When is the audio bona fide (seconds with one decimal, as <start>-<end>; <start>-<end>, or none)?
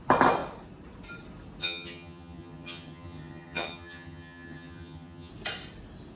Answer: 0.0-1.6; 5.3-6.2